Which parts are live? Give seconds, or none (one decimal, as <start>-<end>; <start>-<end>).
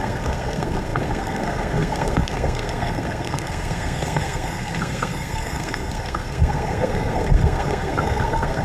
none